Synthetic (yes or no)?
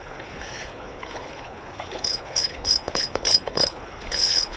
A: yes